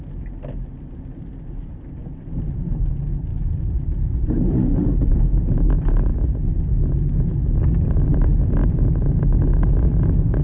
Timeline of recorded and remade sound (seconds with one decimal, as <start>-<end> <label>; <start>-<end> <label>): 0.0-2.0 recorded; 2.0-2.8 remade; 2.8-3.3 recorded; 3.3-5.2 remade; 5.2-10.4 recorded